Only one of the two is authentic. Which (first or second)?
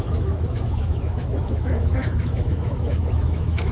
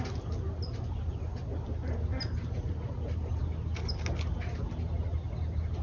second